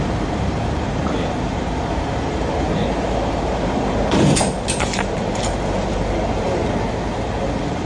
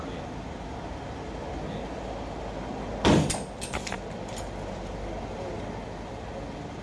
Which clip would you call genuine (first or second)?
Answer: second